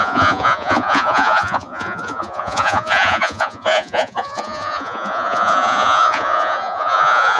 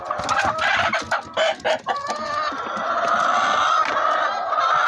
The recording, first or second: second